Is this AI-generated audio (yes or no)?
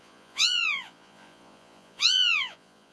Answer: yes